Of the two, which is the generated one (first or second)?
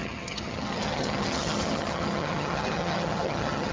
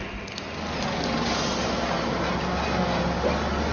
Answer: first